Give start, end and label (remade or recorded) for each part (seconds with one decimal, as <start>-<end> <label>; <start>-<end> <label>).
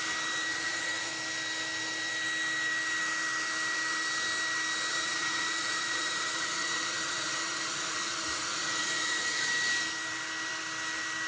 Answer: 0.0-0.5 recorded; 0.5-1.1 remade; 1.1-4.9 recorded; 4.9-9.5 remade; 9.5-11.3 recorded